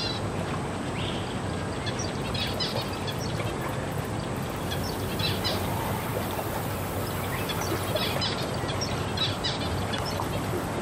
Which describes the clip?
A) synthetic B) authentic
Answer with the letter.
B